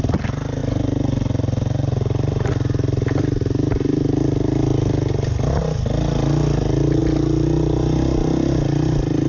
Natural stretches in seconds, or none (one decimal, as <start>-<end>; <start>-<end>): 0.0-0.6; 2.5-9.3